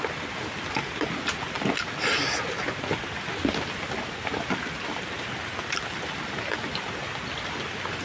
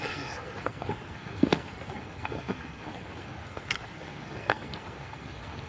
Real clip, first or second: first